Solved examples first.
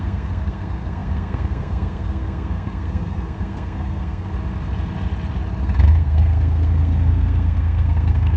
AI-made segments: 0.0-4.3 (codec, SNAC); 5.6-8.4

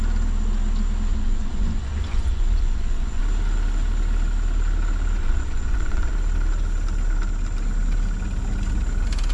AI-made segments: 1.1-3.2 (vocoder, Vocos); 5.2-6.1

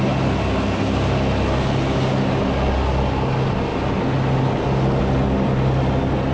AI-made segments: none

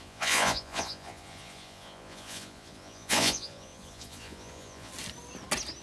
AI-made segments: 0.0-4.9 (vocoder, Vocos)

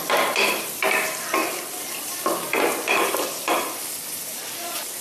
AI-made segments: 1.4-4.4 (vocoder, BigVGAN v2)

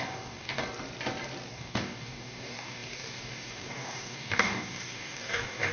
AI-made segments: 0.0-0.6 (codec, DAC); 1.5-5.7

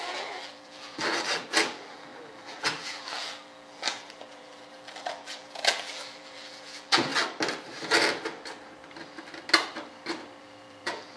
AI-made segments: 0.0-7.1 (vocoder, BigVGAN v2); 10.4-11.2